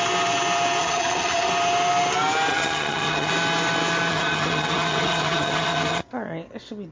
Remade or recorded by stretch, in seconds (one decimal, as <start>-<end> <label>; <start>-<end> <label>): 0.0-0.8 recorded; 0.8-1.5 remade; 1.5-2.5 recorded; 2.5-3.3 remade; 3.3-4.1 recorded; 4.1-6.1 remade; 6.1-6.9 recorded